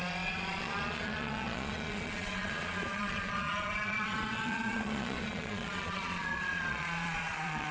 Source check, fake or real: fake